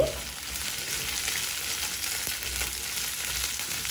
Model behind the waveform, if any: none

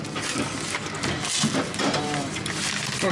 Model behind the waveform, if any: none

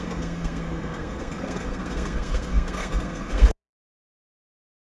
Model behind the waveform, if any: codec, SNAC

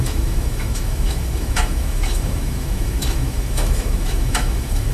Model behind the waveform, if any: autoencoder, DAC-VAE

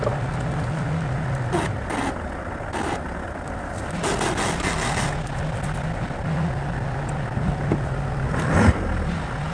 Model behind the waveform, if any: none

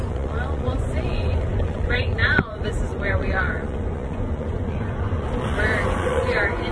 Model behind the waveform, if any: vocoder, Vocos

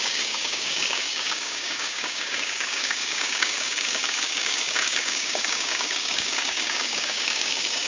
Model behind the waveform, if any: codec, DAC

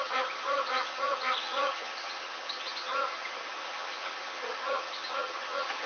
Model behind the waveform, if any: vocoder, HiFi-GAN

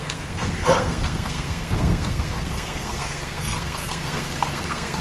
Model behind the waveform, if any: codec, SNAC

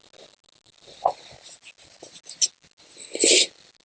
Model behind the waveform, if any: none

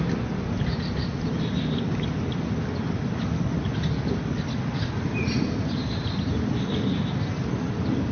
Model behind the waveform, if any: none